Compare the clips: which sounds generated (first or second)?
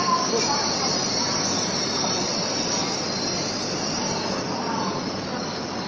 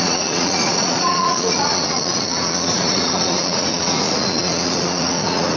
second